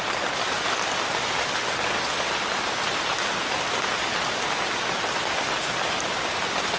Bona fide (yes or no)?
yes